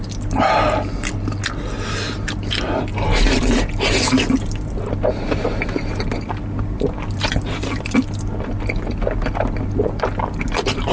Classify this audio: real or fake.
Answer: real